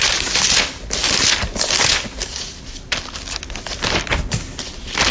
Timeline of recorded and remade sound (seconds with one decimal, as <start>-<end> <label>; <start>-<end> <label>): 0.0-1.0 remade; 1.0-2.0 recorded; 2.0-4.1 remade; 4.1-4.6 recorded; 4.6-5.1 remade